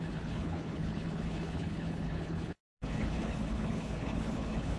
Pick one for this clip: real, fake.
fake